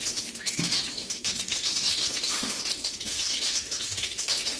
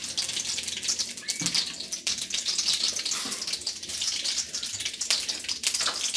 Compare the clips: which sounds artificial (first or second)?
first